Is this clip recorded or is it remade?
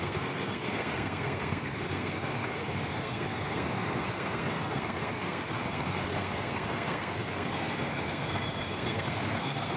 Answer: remade